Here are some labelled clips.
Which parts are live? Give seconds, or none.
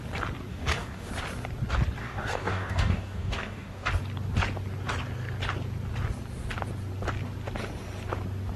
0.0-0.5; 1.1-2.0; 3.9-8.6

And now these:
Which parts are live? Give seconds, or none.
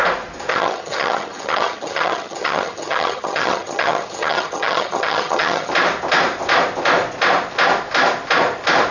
0.0-0.5; 5.7-8.9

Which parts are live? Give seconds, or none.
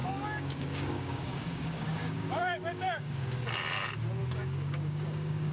3.1-4.2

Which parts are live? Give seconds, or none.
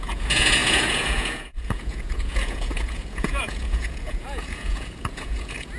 none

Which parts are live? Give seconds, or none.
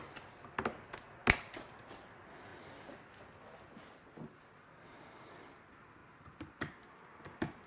0.0-7.7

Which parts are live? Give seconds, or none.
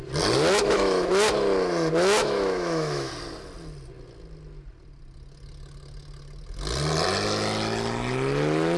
0.0-0.6; 1.1-2.2; 3.1-8.8